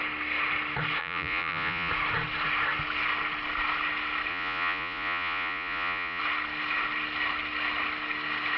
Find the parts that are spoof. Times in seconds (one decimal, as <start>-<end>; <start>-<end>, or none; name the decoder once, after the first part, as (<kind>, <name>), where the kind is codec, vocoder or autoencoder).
1.0-1.9 (vocoder, Vocos); 4.3-6.2

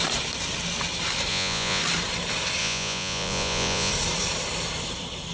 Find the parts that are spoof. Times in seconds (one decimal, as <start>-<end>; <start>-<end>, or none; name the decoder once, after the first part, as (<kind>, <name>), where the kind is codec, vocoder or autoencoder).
1.3-1.8 (vocoder, Vocos); 2.6-3.9

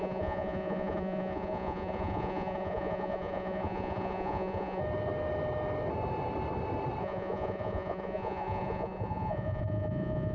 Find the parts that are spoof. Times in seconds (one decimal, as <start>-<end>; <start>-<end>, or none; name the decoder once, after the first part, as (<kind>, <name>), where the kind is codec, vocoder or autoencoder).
0.0-4.8 (vocoder, Vocos); 7.0-10.3

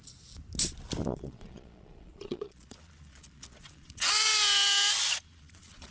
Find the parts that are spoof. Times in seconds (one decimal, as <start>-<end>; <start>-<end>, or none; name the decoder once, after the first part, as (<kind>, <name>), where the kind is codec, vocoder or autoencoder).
1.0-4.1 (vocoder, Vocos); 5.3-5.9

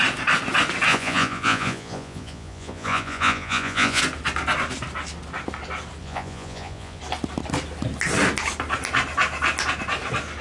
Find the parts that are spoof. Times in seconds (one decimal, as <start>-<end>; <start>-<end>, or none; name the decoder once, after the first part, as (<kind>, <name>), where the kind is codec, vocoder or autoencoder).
0.9-4.0 (vocoder, Vocos); 6.0-7.0

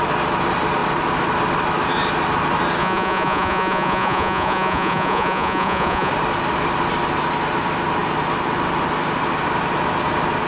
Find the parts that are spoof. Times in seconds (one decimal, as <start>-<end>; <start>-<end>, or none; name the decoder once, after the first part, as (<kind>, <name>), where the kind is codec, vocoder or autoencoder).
2.8-6.1 (vocoder, Vocos)

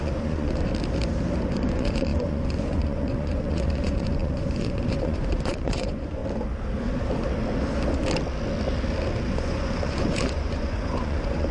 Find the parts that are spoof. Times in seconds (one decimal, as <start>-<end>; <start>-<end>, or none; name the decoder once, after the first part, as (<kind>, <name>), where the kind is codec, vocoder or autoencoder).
0.0-0.7 (vocoder, Vocos); 1.5-6.2; 9.3-11.5

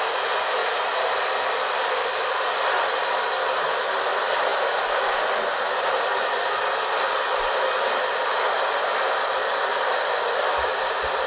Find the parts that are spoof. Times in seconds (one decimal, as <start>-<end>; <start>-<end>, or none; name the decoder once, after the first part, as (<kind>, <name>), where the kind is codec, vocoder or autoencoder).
none